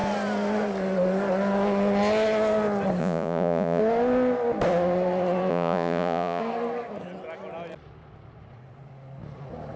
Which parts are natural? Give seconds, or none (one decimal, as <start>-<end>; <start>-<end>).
0.0-3.0; 3.8-5.5; 6.4-9.8